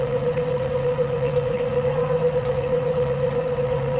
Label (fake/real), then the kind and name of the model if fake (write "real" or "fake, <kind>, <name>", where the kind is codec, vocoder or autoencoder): fake, vocoder, WaveNeXt